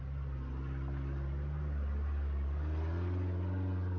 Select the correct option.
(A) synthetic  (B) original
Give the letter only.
B